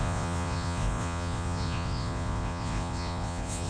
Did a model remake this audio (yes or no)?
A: yes